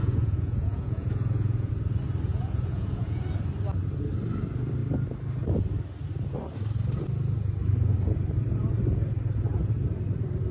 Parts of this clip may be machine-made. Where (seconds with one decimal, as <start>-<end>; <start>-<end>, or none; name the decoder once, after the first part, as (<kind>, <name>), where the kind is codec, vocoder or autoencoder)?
0.0-1.7 (vocoder, Vocos); 2.3-3.2